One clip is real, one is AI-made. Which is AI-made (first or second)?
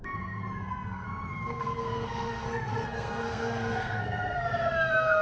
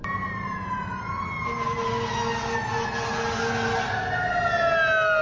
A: first